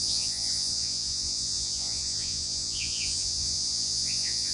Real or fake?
fake